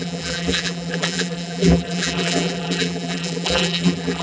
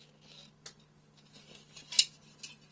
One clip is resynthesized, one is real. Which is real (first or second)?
second